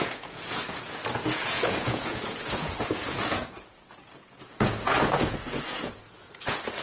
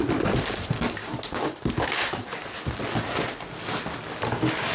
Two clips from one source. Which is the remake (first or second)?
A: first